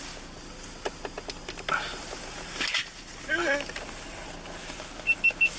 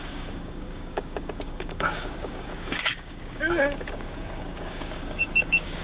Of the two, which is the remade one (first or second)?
second